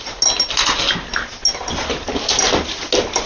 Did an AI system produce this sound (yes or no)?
no